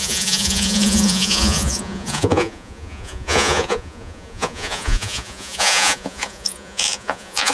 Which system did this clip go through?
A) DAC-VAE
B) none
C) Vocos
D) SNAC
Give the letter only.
C